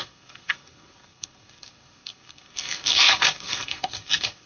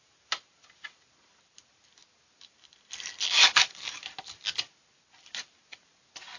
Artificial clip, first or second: first